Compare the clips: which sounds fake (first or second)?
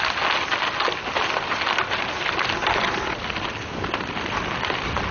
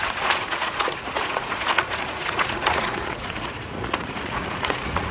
second